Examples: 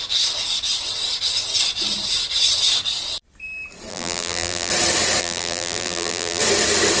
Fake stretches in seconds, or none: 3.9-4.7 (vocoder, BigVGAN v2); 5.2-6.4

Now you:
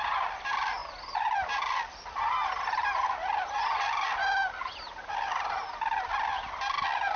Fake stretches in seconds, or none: none

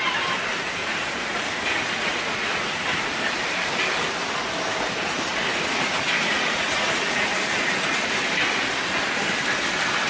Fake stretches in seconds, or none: 0.8-3.1 (vocoder, Vocos); 5.3-8.1